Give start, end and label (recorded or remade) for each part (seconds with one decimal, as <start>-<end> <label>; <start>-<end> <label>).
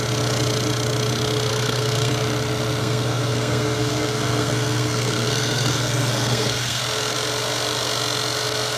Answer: 0.0-1.5 recorded; 1.5-2.1 remade; 2.1-2.8 recorded; 2.8-6.8 remade; 6.8-8.8 recorded